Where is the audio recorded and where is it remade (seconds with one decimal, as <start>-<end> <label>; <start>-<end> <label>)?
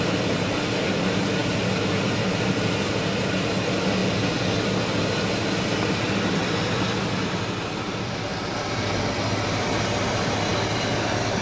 0.0-11.4 recorded